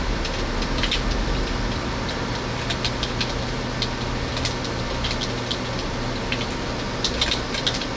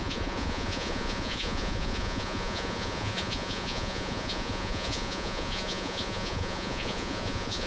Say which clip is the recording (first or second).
first